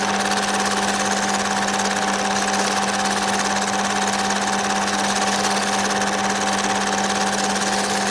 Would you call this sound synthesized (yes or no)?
no